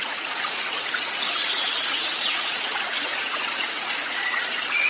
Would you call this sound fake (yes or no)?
yes